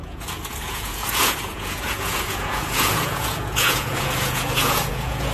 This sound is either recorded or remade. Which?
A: remade